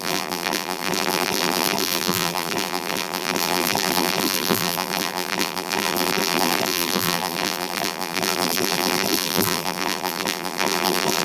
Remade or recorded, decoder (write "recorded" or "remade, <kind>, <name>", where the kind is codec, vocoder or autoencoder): remade, vocoder, BigVGAN v2